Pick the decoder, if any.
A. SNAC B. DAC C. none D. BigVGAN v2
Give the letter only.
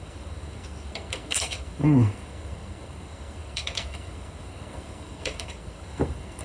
A